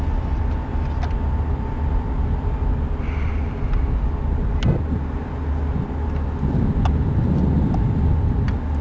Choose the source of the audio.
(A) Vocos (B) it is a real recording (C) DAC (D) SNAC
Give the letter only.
B